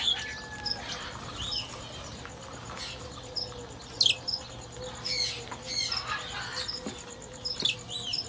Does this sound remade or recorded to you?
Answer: recorded